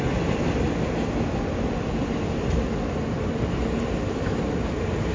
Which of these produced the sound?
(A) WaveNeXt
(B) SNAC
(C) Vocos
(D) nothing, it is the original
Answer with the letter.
D